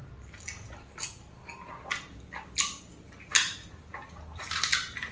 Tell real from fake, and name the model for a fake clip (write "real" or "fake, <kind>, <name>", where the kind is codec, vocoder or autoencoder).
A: real